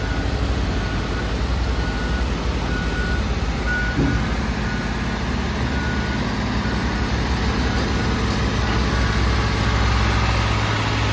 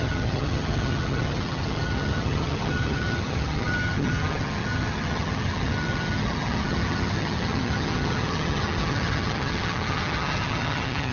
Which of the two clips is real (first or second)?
first